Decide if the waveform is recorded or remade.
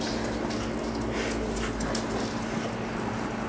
recorded